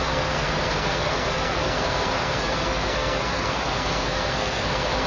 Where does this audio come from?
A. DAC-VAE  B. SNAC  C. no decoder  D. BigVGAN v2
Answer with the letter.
B